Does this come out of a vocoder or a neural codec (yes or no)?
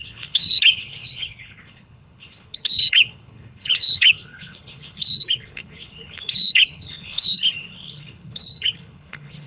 yes